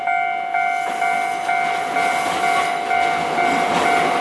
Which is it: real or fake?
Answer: real